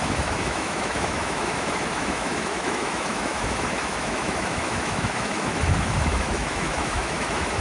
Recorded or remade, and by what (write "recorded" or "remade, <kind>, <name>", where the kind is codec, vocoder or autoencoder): remade, autoencoder, DAC-VAE